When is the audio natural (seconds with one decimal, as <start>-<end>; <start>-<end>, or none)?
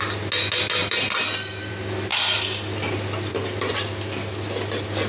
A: 0.0-5.1